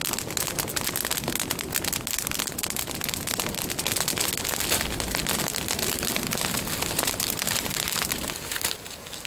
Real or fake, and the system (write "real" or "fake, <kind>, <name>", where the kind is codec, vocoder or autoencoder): real